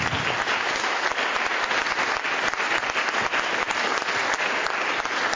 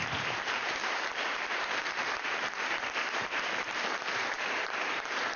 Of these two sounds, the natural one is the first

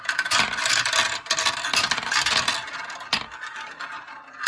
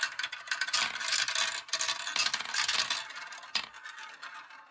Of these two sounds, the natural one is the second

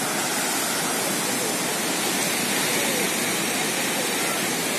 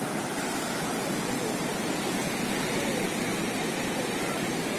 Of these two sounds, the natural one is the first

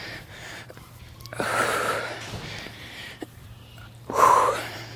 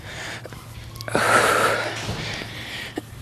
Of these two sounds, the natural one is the second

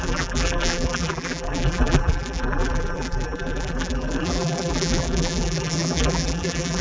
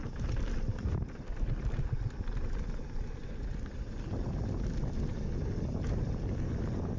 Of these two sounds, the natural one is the second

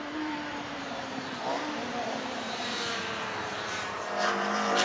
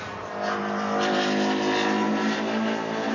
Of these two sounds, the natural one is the second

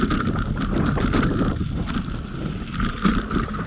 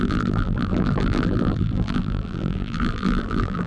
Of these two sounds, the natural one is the first